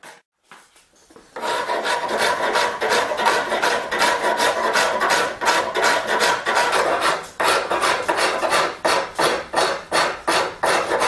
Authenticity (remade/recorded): recorded